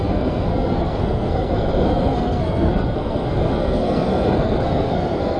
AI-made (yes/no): yes